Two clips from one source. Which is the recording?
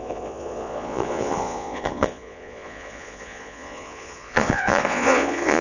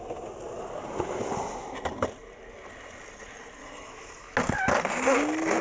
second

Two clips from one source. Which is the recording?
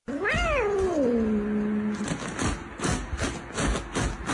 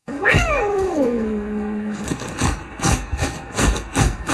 first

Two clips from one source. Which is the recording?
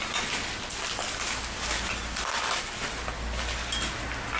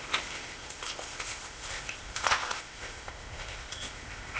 first